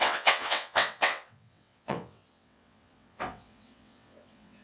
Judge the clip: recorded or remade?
remade